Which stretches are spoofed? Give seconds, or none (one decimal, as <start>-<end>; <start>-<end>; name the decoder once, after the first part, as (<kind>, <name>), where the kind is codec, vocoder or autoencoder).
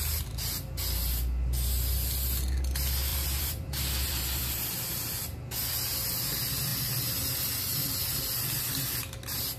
3.1-4.8 (vocoder, BigVGAN v2)